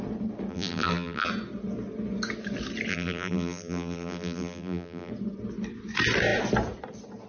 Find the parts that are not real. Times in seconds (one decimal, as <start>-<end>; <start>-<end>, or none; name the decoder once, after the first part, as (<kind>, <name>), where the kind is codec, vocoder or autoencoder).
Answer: 0.5-1.3 (vocoder, BigVGAN v2); 2.9-5.1